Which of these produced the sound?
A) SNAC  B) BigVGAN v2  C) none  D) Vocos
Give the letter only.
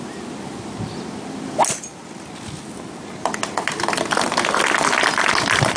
C